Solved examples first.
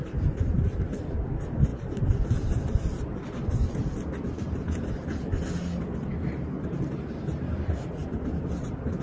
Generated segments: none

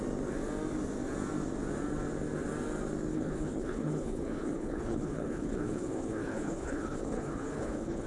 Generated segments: 3.1-8.1 (codec, HILCodec)

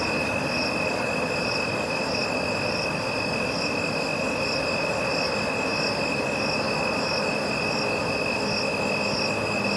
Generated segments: none

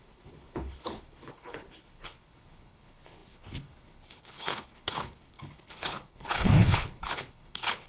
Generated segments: 0.0-7.9 (codec, HILCodec)

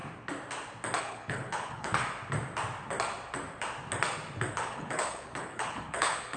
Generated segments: 1.0-2.0 (codec, HILCodec); 4.5-6.4

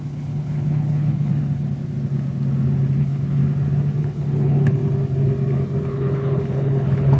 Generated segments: 0.0-1.3 (codec, HILCodec); 3.0-3.4; 4.0-4.8; 5.8-7.2

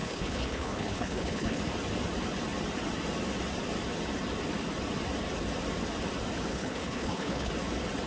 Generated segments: 0.0-1.6 (codec, HILCodec); 6.5-7.5